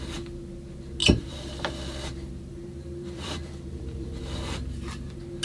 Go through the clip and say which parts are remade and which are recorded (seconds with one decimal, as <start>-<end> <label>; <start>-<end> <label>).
0.0-1.0 recorded; 1.0-4.2 remade; 4.2-5.4 recorded